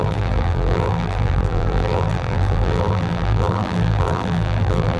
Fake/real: fake